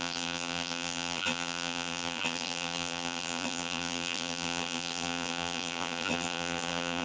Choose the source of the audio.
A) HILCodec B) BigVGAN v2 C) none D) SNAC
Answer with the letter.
B